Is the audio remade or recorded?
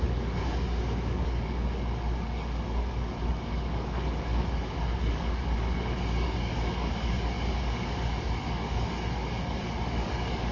remade